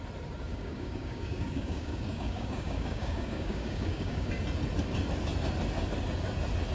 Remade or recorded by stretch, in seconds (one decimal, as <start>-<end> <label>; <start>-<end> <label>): 0.0-0.5 recorded; 0.5-4.3 remade; 4.3-6.7 recorded